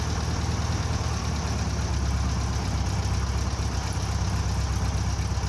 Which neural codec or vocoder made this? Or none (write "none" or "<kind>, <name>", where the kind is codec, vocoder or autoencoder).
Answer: none